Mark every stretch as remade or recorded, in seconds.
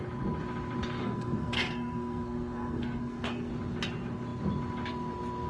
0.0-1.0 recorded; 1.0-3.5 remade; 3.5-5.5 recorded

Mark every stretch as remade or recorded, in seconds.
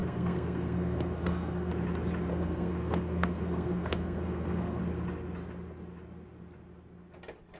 0.0-1.7 remade; 1.7-2.3 recorded; 2.3-4.8 remade; 4.8-7.6 recorded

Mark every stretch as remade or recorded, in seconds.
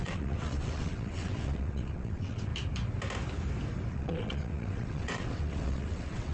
0.0-2.5 remade; 2.5-3.9 recorded; 3.9-6.3 remade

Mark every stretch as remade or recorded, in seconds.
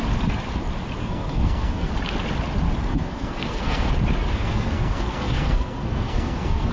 0.0-1.0 recorded; 1.0-1.9 remade; 1.9-2.9 recorded; 2.9-3.9 remade; 3.9-4.3 recorded; 4.3-6.7 remade